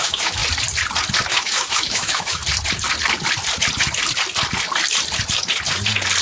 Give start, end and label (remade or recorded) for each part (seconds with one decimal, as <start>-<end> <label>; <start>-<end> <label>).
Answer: 0.0-0.4 remade; 0.4-1.3 recorded; 1.3-2.4 remade; 2.4-6.2 recorded